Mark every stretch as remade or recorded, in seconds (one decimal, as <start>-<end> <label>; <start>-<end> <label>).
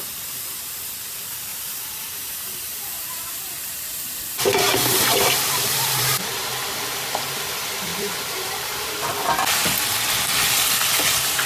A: 0.0-1.5 recorded; 1.5-6.4 remade; 6.4-7.9 recorded; 7.9-9.1 remade; 9.1-11.5 recorded